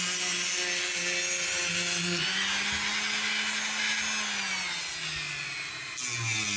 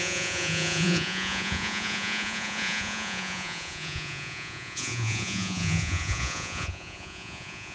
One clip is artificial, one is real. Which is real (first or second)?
first